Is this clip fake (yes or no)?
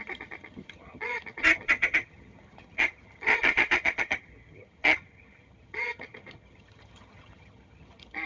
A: yes